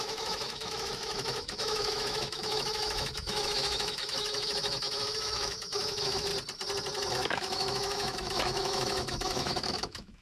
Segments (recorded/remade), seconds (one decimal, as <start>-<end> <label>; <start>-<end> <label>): 0.0-6.3 remade; 6.3-7.1 recorded; 7.1-10.2 remade